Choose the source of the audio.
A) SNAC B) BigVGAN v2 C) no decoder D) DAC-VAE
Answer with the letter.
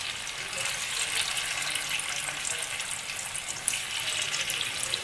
C